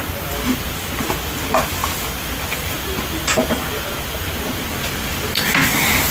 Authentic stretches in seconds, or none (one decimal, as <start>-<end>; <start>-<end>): 0.0-6.1